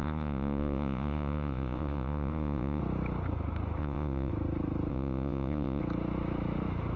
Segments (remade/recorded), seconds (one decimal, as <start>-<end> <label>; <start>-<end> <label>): 0.0-2.8 remade; 2.8-3.8 recorded; 3.8-4.3 remade; 4.3-4.9 recorded; 4.9-5.8 remade; 5.8-7.0 recorded